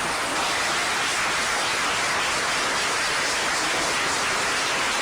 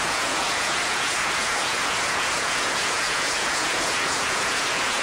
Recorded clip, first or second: first